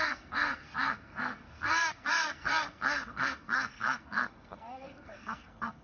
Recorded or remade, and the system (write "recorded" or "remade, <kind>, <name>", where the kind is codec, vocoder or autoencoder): remade, codec, SNAC